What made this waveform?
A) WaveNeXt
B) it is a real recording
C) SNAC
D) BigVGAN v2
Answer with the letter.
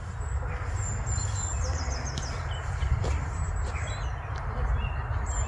B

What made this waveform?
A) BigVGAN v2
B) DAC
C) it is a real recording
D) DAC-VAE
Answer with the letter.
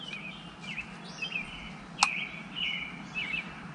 C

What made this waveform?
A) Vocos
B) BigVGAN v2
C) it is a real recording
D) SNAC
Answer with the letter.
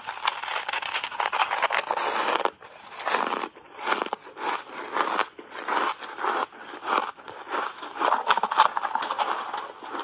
C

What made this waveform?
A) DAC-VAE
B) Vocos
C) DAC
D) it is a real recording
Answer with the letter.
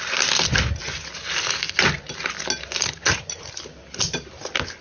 D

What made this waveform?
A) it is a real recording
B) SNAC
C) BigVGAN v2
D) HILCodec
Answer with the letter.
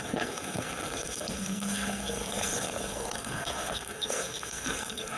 B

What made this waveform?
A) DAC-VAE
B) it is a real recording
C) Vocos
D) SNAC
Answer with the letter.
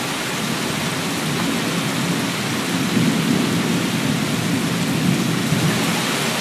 B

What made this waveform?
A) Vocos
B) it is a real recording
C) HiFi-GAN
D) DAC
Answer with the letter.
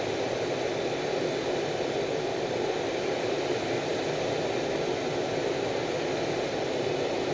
B